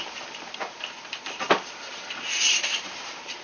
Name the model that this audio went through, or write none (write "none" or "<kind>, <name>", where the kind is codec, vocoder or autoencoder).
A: vocoder, BigVGAN v2